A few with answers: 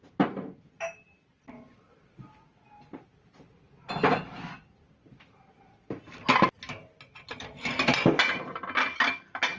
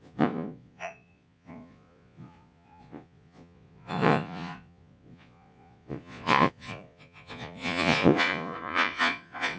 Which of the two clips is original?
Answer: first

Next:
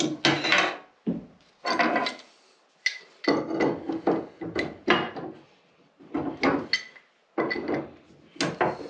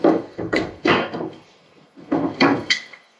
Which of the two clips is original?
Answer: first